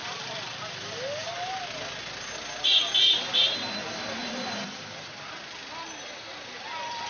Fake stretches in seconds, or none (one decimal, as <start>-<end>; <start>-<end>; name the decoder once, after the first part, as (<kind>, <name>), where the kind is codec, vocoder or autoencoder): 0.0-0.6 (vocoder, BigVGAN v2); 4.2-5.5; 6.3-7.1